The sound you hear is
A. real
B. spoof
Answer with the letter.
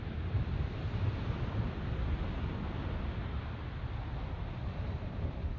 A